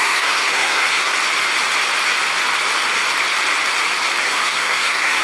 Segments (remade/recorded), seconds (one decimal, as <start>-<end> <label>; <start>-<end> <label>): 0.0-1.1 remade; 1.1-4.2 recorded; 4.2-5.2 remade